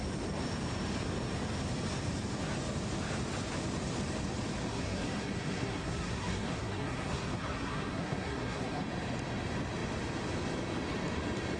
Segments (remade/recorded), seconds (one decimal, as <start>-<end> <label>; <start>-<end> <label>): 0.0-4.7 recorded; 4.7-8.8 remade; 8.8-11.6 recorded